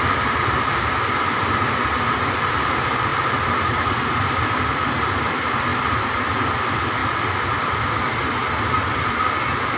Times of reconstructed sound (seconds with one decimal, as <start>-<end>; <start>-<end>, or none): none